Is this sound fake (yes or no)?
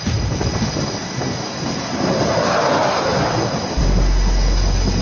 no